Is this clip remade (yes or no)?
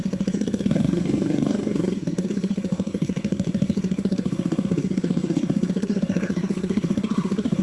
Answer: yes